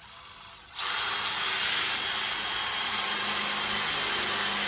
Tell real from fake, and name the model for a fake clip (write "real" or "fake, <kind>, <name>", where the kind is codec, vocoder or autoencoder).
real